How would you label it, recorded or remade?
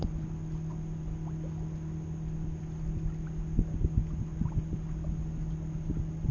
recorded